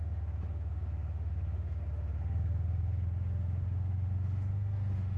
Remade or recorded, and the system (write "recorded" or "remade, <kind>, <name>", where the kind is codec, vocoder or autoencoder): remade, autoencoder, DAC-VAE